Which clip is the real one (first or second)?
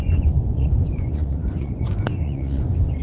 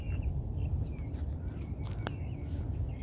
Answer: second